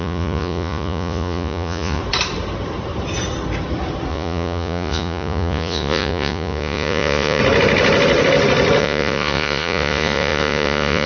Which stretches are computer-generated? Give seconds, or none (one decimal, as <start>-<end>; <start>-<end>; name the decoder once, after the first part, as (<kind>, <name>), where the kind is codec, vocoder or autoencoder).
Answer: 0.0-2.0 (vocoder, Vocos); 4.1-7.4; 8.8-11.1